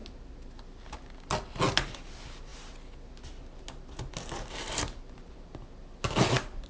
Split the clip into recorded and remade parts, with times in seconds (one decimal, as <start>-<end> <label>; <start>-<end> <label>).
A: 0.0-6.7 recorded